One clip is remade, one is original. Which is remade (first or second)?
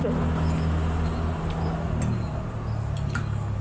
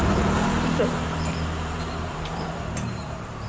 second